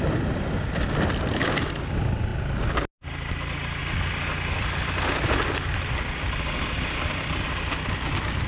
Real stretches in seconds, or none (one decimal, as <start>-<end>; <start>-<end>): 0.0-8.5